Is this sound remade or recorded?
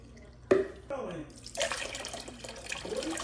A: recorded